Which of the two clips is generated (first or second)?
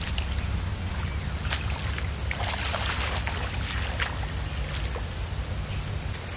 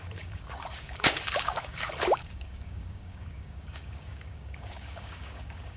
second